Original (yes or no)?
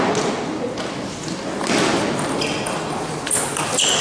yes